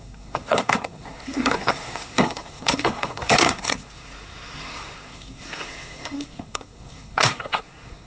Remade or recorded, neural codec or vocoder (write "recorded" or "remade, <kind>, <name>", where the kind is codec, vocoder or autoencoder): remade, codec, SNAC